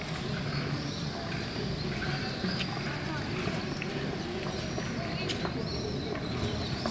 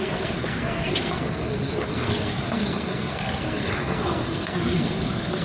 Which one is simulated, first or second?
second